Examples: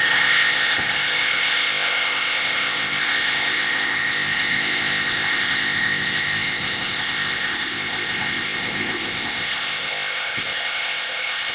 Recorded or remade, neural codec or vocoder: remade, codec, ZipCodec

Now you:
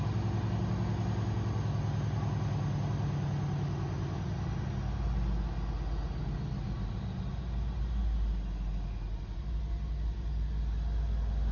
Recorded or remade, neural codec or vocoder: recorded